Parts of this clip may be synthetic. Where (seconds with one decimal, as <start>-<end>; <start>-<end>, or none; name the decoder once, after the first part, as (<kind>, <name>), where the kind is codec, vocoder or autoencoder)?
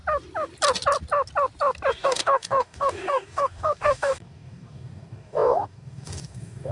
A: 1.9-6.7 (codec, DAC)